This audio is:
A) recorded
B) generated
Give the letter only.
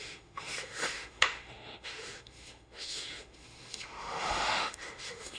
B